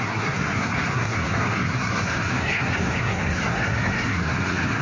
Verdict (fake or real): fake